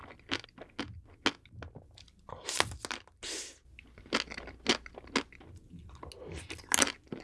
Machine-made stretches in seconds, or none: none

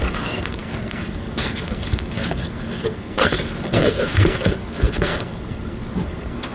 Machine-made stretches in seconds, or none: 0.0-6.5 (codec, SNAC)

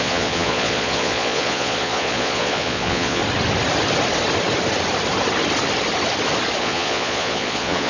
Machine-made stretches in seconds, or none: 0.0-3.2 (vocoder, Vocos); 6.6-7.9

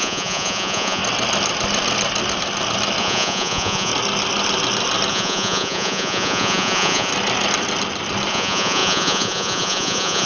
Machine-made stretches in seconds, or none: 0.0-1.0 (vocoder, Vocos); 3.0-3.9; 5.1-7.1; 8.3-10.3

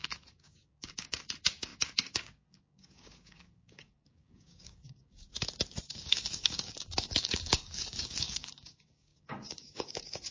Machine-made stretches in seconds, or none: 0.0-5.3 (codec, DAC); 5.8-10.3

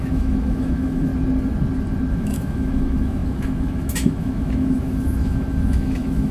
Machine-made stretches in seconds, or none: 0.0-1.1 (autoencoder, DAC-VAE); 2.1-6.3

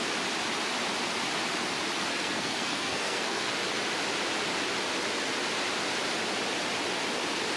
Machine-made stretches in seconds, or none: 2.1-3.5 (codec, SNAC)